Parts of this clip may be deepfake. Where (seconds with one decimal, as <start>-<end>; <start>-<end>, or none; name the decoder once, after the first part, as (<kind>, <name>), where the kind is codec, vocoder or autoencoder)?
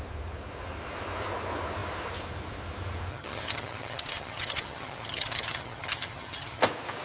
3.1-6.6 (vocoder, HiFi-GAN)